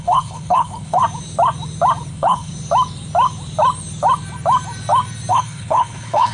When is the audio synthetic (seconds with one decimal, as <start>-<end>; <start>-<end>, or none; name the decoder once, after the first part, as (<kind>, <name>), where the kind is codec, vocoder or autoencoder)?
0.0-1.0 (codec, HILCodec); 2.1-2.5; 5.3-6.3